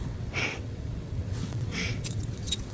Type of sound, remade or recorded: remade